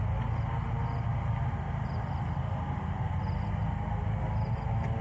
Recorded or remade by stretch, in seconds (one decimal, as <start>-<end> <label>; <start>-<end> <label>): 0.0-5.0 recorded